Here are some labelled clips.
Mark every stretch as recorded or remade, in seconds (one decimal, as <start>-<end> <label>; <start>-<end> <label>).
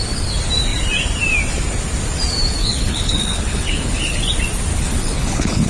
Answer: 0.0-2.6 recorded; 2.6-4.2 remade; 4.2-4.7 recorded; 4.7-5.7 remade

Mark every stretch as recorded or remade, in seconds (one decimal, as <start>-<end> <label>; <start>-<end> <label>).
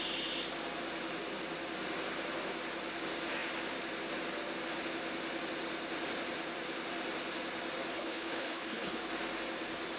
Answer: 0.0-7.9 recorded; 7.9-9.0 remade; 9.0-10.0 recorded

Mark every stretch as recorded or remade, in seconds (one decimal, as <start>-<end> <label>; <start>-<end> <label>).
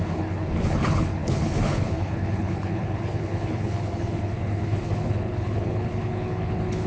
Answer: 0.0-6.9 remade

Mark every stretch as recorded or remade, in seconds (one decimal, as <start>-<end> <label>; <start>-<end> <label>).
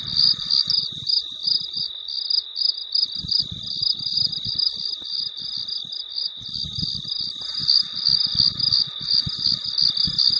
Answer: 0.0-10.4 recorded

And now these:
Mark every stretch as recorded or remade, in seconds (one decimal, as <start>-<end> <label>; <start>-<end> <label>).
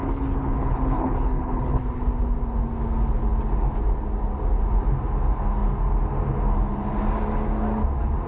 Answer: 0.0-1.8 remade; 1.8-8.3 recorded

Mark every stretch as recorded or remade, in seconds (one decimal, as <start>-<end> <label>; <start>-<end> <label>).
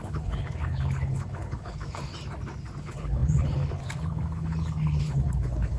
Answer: 0.0-2.1 remade; 2.1-2.8 recorded; 2.8-5.8 remade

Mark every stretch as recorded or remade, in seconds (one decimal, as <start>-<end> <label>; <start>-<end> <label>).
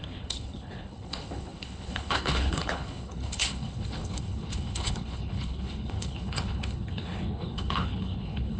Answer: 0.0-8.6 remade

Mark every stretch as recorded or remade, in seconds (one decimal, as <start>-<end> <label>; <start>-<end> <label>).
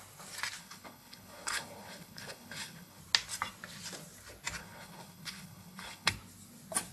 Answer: 0.0-0.6 recorded; 0.6-3.0 remade; 3.0-4.6 recorded; 4.6-6.1 remade; 6.1-6.9 recorded